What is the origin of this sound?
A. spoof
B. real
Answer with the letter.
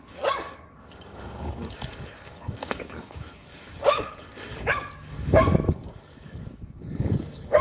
A